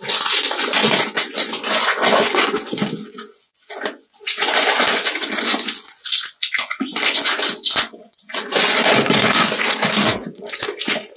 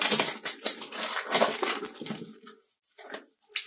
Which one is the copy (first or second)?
first